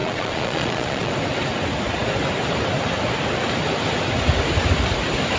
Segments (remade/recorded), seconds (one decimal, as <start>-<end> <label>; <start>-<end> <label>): 0.0-1.1 remade; 1.1-5.4 recorded